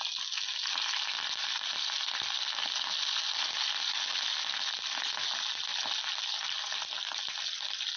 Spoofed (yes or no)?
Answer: no